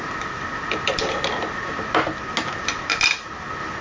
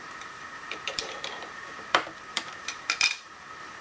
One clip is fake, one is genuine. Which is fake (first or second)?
second